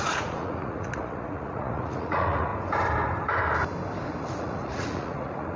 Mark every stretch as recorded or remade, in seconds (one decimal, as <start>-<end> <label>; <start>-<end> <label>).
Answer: 0.0-2.5 remade; 2.5-4.2 recorded; 4.2-5.6 remade